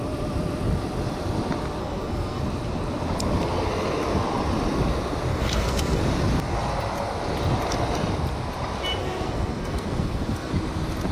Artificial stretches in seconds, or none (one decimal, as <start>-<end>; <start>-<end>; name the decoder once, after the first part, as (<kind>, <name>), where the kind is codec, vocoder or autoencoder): 1.8-2.4 (codec, SNAC); 5.3-6.0; 9.0-10.5

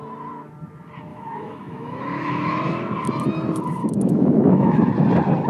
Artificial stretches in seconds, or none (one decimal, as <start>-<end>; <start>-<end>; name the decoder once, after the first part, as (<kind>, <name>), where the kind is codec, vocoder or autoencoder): 1.1-2.8 (autoencoder, DAC-VAE); 3.8-4.9

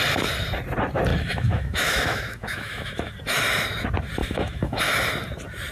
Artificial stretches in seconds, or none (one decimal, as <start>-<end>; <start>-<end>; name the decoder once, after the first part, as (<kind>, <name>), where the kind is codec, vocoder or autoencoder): 1.1-3.1 (autoencoder, DAC-VAE); 4.2-4.8